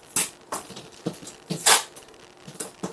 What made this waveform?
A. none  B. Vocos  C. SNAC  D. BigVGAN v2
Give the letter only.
A